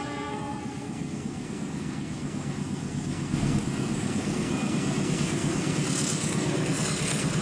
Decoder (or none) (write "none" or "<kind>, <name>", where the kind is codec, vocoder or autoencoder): codec, SNAC